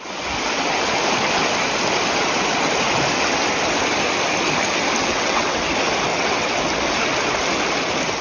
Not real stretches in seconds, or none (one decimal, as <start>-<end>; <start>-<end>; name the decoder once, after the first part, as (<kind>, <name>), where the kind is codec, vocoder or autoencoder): 5.0-5.6 (vocoder, WaveNeXt); 6.1-6.6